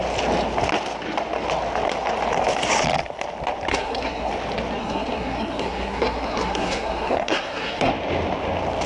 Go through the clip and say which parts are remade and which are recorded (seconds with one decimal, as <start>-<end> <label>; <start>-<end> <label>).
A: 0.0-3.7 recorded; 3.7-4.3 remade; 4.3-4.8 recorded; 4.8-7.9 remade; 7.9-8.9 recorded